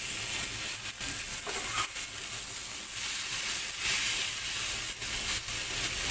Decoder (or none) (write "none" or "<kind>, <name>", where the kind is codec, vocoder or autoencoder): none